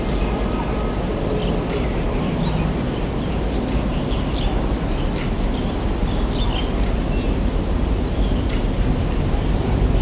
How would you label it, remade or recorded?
recorded